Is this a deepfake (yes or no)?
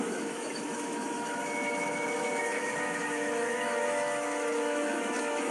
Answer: yes